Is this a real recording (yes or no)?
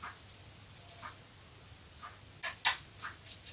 yes